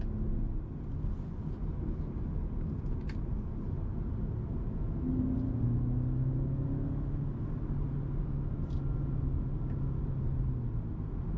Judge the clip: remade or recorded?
recorded